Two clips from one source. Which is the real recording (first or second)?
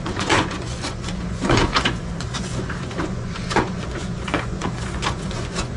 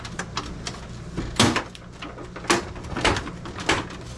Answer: second